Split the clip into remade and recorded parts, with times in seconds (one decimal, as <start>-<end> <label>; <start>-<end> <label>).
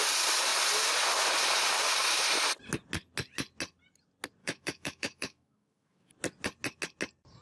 0.0-4.4 recorded; 4.4-6.1 remade; 6.1-7.4 recorded